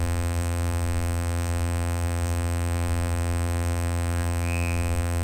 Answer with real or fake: fake